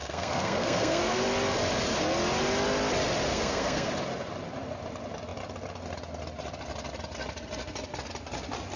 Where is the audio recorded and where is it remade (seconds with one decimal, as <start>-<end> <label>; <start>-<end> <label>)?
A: 0.0-1.2 remade; 1.2-3.3 recorded; 3.3-3.9 remade; 3.9-8.8 recorded